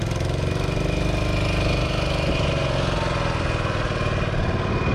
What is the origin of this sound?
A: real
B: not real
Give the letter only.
A